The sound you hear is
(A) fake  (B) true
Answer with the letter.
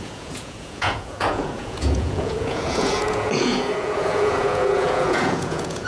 A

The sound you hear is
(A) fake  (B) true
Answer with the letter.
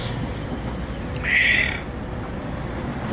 B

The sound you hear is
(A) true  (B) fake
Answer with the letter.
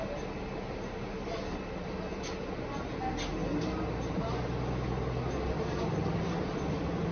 A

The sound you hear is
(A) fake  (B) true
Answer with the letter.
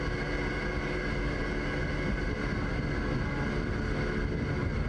B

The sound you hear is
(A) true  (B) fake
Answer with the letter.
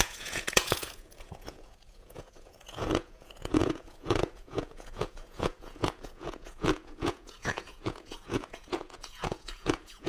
B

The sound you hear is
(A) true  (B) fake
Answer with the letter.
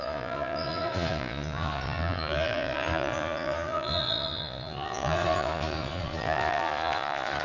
B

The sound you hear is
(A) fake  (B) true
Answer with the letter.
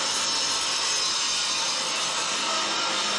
B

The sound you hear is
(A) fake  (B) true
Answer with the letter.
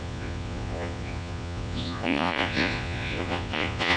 A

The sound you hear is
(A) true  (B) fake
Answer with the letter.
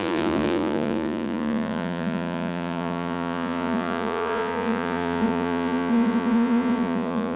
B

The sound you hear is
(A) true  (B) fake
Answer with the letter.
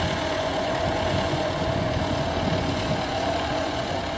B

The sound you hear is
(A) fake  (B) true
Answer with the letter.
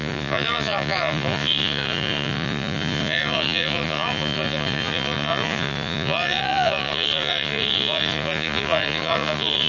A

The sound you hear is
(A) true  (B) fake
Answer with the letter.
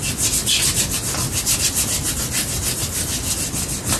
A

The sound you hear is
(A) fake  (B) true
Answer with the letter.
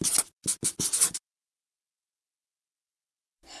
B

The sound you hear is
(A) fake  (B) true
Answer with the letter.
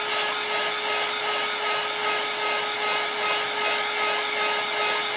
B